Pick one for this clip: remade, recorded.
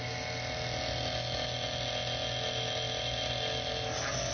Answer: recorded